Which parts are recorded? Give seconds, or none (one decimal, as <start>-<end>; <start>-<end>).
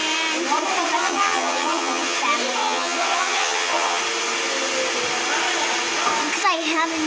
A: 0.0-1.0; 2.2-2.6; 4.0-7.1